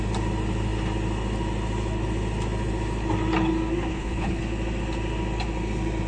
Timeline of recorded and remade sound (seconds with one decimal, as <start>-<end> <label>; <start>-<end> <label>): 0.0-3.9 recorded; 3.9-4.4 remade; 4.4-6.1 recorded